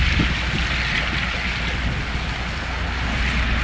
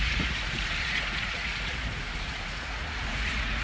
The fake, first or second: second